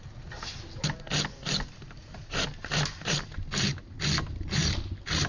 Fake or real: real